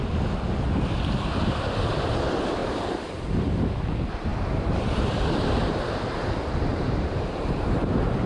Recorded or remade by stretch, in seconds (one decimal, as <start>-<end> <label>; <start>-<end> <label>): 0.0-2.6 recorded; 2.6-3.2 remade; 3.2-4.3 recorded; 4.3-6.1 remade; 6.1-6.7 recorded; 6.7-8.3 remade